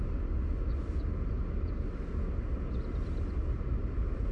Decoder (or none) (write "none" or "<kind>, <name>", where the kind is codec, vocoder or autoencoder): none